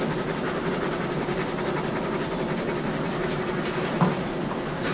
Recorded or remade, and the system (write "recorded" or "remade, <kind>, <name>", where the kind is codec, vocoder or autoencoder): recorded